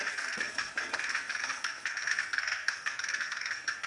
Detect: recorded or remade remade